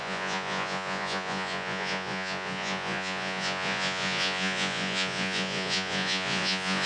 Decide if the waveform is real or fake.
fake